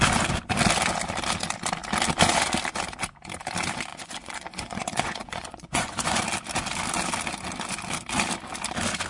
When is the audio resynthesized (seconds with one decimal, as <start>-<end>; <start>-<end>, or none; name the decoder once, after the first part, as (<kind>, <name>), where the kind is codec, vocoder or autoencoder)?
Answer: 3.9-6.2 (vocoder, Vocos)